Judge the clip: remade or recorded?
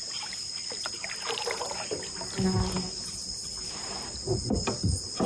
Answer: recorded